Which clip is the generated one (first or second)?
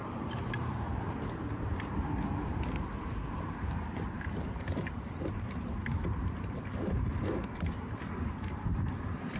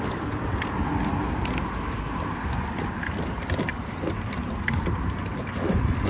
first